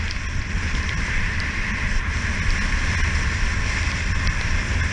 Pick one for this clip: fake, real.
real